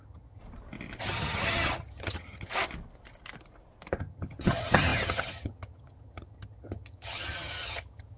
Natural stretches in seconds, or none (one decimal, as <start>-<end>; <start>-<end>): 0.4-1.0; 2.5-4.0